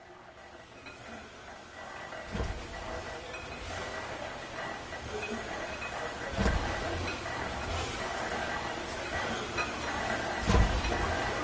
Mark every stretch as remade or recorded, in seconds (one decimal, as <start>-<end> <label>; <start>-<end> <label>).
0.0-11.4 recorded